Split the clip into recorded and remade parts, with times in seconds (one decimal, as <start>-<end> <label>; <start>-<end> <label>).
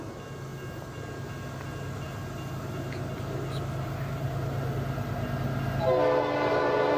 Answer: 0.0-7.0 recorded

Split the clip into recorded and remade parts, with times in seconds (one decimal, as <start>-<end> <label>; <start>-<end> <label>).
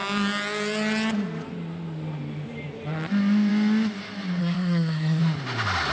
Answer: 0.0-4.4 recorded; 4.4-5.2 remade; 5.2-5.9 recorded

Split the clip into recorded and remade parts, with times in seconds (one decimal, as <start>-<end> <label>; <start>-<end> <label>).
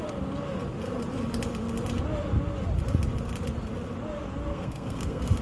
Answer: 0.0-4.5 recorded; 4.5-5.4 remade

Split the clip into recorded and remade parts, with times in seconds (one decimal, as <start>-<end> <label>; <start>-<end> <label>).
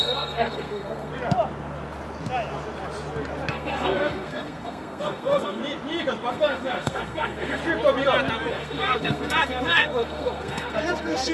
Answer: 0.0-1.1 remade; 1.1-3.5 recorded; 3.5-5.6 remade; 5.6-6.3 recorded; 6.3-7.6 remade; 7.6-8.5 recorded; 8.5-11.3 remade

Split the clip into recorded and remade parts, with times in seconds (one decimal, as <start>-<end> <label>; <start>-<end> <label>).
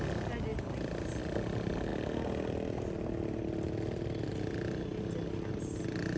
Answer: 0.0-6.2 recorded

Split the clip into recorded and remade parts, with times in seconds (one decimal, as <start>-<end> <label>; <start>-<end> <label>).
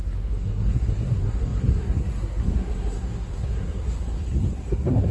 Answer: 0.0-5.1 remade